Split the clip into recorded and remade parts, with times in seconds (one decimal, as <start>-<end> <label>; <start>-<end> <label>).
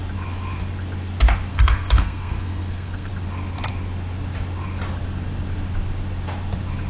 0.0-1.5 recorded; 1.5-3.1 remade; 3.1-6.9 recorded